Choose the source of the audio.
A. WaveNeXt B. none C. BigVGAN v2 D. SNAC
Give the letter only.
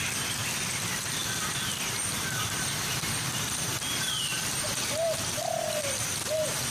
C